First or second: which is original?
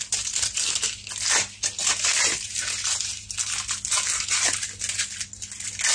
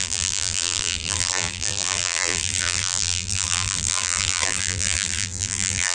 first